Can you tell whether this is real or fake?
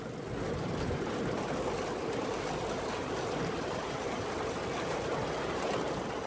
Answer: fake